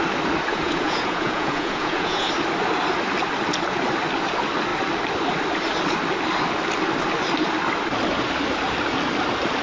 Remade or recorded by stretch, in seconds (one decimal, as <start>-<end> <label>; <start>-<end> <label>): 0.0-0.5 recorded; 0.5-2.3 remade; 2.3-9.6 recorded